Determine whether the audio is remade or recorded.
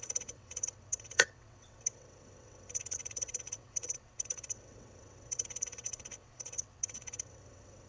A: remade